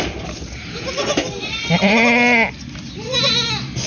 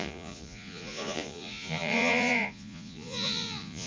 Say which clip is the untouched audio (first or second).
first